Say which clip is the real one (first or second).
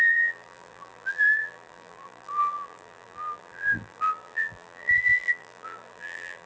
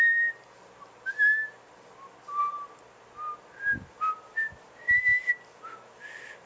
second